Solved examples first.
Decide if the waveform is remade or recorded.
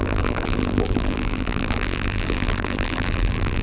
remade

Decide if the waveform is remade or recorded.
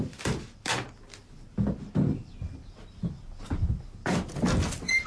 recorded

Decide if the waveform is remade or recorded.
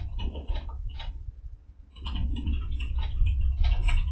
remade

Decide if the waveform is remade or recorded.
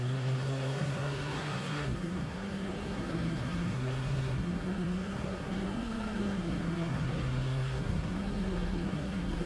remade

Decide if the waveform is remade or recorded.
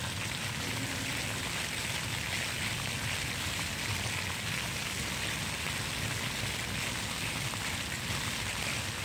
recorded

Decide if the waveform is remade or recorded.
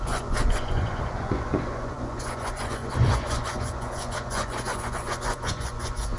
remade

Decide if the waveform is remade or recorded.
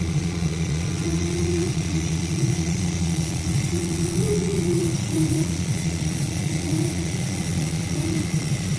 remade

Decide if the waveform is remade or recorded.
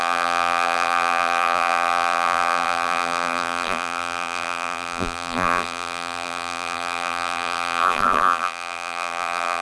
remade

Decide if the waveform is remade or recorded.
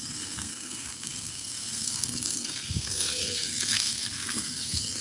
remade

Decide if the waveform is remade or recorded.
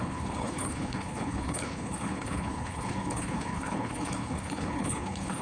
remade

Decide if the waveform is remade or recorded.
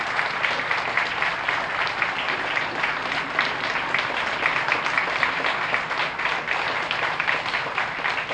recorded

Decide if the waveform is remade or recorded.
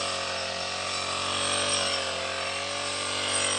recorded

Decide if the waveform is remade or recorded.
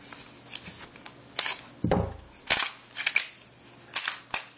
recorded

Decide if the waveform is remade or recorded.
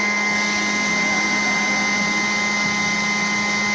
recorded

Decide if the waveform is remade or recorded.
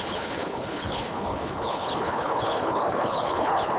remade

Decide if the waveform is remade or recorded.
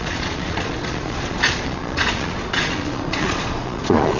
remade